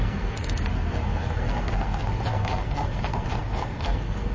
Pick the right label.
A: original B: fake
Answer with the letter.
B